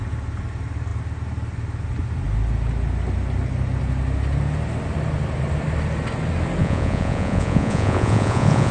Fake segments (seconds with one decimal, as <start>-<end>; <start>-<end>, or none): 6.6-8.7